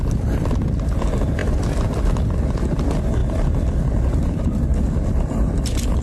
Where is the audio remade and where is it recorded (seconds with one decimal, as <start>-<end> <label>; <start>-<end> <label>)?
0.0-6.0 recorded